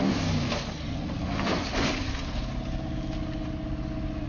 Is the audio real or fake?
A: real